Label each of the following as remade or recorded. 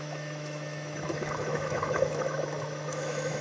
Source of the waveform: remade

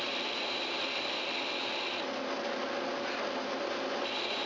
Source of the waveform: recorded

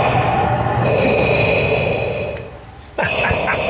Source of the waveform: recorded